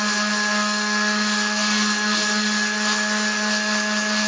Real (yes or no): yes